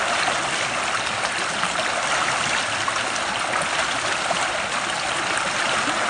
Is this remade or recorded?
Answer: recorded